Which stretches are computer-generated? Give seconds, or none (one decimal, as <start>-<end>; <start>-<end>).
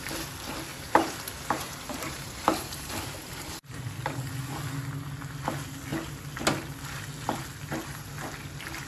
0.7-3.8